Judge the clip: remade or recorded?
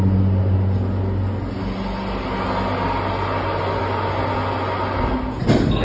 recorded